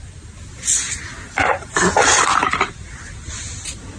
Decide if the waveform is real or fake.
real